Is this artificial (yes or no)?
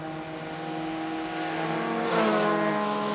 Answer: no